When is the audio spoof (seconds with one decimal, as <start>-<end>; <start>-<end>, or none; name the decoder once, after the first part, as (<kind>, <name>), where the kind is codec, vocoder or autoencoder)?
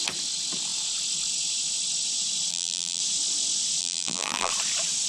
2.5-3.0 (vocoder, BigVGAN v2); 3.8-4.5